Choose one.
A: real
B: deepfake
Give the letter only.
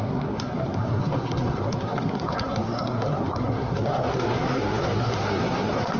B